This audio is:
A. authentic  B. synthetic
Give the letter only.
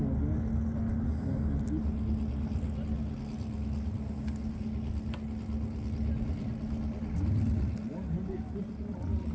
A